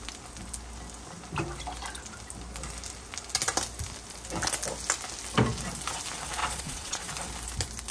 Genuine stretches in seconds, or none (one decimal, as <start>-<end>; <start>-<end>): 0.0-6.4; 7.1-7.9